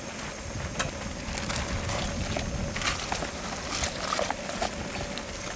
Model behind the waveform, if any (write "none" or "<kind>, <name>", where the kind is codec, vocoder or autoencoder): none